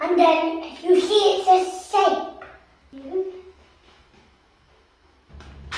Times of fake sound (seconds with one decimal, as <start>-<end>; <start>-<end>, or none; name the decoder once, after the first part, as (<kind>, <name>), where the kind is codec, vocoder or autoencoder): 2.7-5.3 (autoencoder, DAC-VAE)